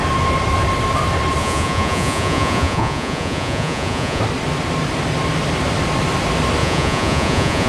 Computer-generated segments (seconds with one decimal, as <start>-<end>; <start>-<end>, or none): 1.4-4.2; 6.6-7.7